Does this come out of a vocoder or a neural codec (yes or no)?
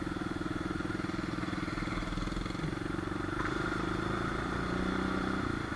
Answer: no